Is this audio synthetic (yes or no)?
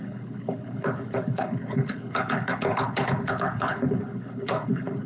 yes